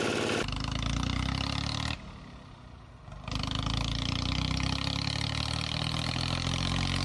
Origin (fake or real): real